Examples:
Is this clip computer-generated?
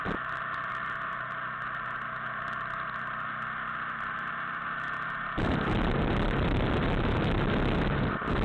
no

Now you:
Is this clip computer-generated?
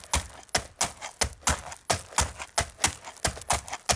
no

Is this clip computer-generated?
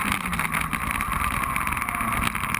no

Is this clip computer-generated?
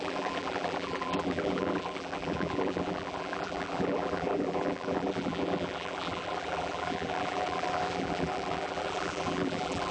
yes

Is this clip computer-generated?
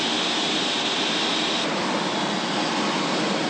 no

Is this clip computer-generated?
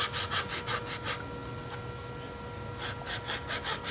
no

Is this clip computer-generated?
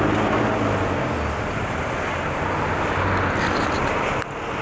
no